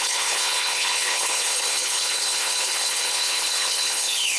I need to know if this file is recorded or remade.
remade